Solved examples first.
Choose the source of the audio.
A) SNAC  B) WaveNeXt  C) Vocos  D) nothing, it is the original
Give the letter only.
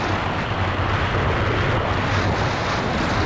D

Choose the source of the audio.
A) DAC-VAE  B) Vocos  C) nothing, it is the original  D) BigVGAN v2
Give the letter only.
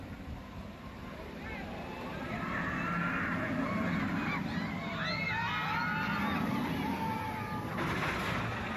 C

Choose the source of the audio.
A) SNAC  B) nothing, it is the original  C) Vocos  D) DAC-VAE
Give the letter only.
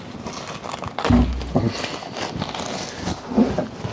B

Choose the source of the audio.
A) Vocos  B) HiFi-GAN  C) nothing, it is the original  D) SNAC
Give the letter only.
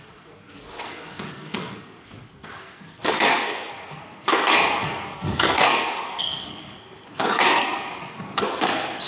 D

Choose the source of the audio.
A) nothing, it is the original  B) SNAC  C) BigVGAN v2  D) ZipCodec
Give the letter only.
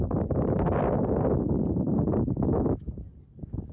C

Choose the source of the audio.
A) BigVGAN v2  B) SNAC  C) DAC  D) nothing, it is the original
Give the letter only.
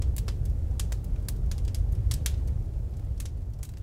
D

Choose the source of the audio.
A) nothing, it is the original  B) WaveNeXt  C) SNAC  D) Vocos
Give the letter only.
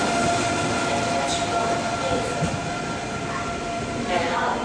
A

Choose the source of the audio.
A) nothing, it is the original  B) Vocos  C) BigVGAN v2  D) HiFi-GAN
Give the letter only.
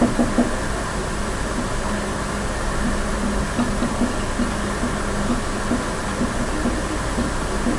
A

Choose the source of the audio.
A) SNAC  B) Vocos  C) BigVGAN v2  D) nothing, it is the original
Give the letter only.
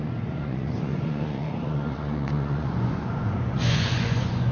B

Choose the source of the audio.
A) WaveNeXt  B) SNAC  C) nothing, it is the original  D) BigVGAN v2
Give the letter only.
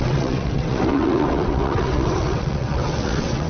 A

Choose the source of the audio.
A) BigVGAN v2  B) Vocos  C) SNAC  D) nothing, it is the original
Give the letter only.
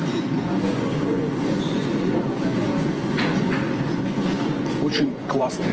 B